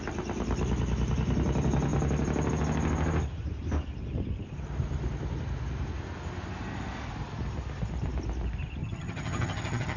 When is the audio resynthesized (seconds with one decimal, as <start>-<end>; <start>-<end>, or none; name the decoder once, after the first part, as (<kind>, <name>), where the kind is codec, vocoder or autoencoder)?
8.8-10.0 (vocoder, HiFi-GAN)